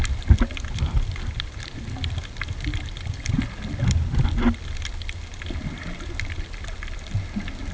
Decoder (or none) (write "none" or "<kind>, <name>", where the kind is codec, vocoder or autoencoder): none